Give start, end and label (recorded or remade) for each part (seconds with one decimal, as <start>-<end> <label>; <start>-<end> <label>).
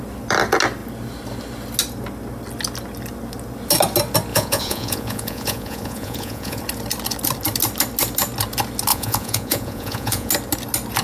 0.0-4.3 recorded; 4.3-6.6 remade; 6.6-8.9 recorded; 8.9-10.3 remade; 10.3-11.0 recorded